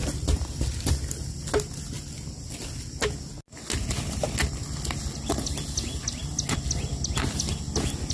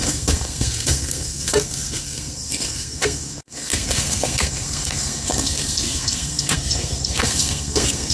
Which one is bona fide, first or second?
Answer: first